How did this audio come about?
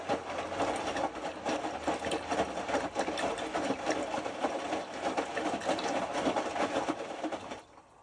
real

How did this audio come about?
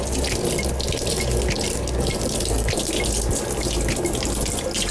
real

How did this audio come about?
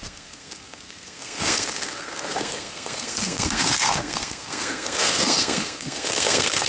fake